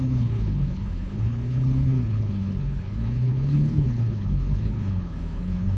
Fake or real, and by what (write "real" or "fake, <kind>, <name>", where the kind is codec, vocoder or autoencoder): fake, codec, HILCodec